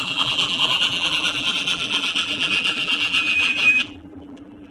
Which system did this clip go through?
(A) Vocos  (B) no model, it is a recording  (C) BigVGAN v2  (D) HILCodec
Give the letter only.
C